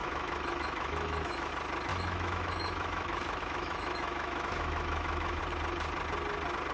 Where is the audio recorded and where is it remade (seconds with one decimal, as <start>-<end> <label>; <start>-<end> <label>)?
0.0-1.5 remade; 1.5-1.9 recorded; 1.9-5.4 remade; 5.4-6.7 recorded